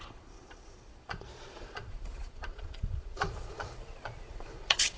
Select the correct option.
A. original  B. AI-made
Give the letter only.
B